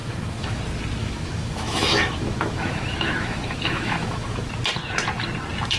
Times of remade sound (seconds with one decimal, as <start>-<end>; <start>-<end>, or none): 0.0-0.6; 1.0-4.5